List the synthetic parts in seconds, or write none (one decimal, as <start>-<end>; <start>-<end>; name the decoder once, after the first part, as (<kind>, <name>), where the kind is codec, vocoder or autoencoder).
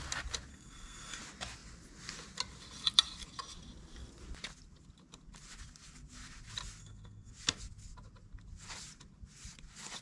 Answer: 0.5-1.2 (codec, SNAC); 6.8-7.3